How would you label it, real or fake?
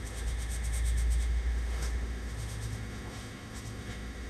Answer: fake